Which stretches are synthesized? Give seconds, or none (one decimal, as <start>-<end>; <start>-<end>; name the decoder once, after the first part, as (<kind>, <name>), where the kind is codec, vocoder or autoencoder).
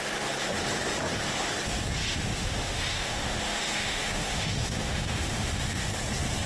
2.0-5.9 (autoencoder, DAC-VAE)